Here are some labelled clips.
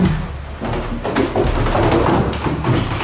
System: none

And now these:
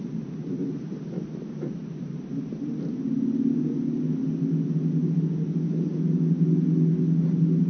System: none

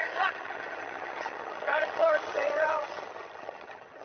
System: vocoder, HiFi-GAN